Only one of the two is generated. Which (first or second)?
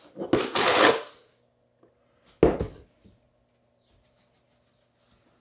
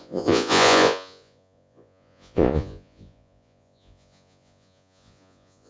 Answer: second